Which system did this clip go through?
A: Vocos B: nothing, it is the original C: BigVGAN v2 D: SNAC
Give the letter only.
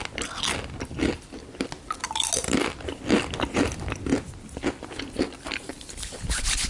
B